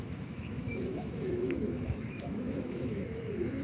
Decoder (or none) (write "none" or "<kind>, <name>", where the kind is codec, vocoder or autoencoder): autoencoder, DAC-VAE